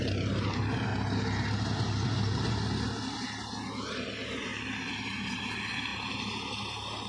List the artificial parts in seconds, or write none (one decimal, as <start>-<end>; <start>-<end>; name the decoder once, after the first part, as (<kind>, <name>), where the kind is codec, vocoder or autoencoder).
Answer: none